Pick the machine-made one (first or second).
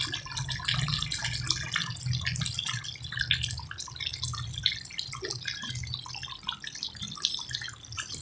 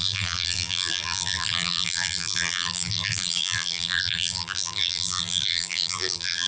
second